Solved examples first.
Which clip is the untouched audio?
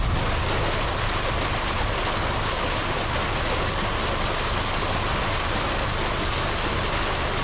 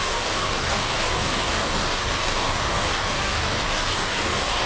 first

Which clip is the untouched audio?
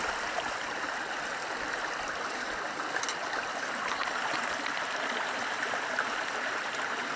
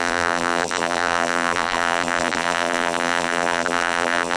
first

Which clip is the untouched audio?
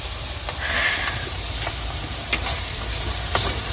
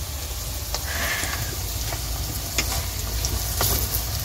second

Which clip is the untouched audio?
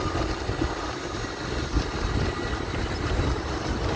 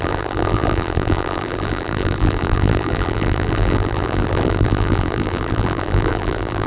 first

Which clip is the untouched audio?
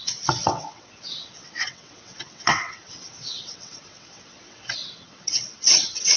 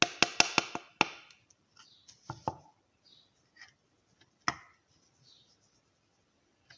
second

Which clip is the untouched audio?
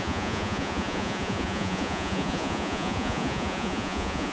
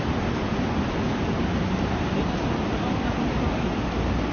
second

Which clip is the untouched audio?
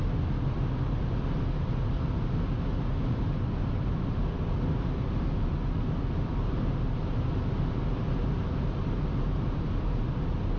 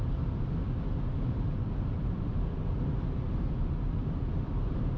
first